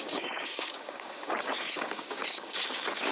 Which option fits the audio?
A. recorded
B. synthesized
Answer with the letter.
B